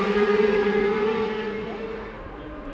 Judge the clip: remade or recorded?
remade